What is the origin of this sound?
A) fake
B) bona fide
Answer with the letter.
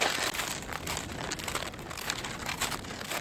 B